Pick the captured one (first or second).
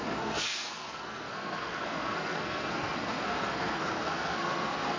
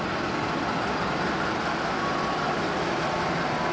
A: second